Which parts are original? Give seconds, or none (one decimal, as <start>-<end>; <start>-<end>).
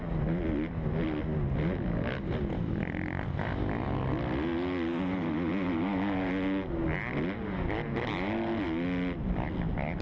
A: 0.0-10.0